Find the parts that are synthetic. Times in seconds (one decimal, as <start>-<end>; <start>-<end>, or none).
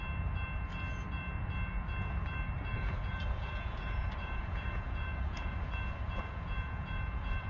2.7-7.5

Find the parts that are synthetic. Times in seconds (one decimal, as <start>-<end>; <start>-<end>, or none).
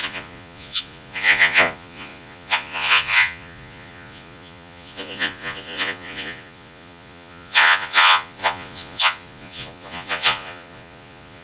0.0-11.4